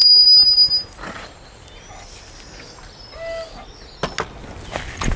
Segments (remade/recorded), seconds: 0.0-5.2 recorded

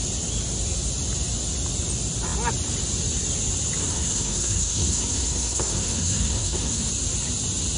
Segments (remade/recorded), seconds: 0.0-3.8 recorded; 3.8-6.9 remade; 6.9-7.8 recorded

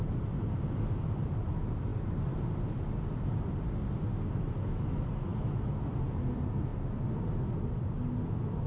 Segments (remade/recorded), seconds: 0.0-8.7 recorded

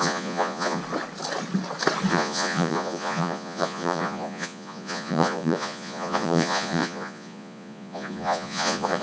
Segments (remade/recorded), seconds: 0.0-0.8 remade; 0.8-2.1 recorded; 2.1-9.0 remade

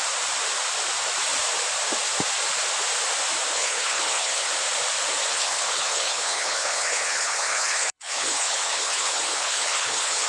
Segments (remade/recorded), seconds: 0.0-3.5 recorded; 3.5-4.5 remade; 4.5-5.3 recorded; 5.3-10.3 remade